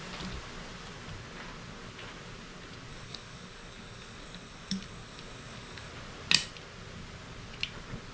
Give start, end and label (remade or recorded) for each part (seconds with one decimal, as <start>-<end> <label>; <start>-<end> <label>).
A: 0.0-2.9 recorded; 2.9-5.9 remade; 5.9-8.1 recorded